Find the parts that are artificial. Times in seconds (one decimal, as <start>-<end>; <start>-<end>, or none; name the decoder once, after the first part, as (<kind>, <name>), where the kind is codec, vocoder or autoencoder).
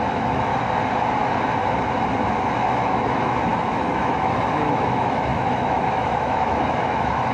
0.0-0.5 (autoencoder, DAC-VAE); 2.4-7.3